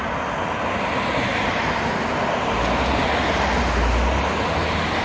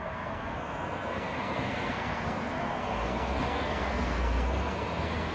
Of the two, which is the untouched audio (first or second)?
first